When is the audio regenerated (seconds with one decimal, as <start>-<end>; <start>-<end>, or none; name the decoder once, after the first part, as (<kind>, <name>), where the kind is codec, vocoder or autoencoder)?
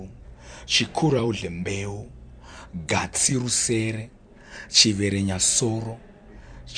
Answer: 1.0-3.3 (vocoder, BigVGAN v2)